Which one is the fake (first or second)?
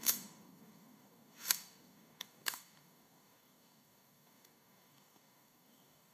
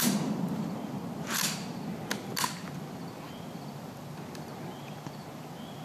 first